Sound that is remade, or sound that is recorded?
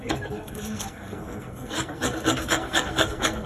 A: remade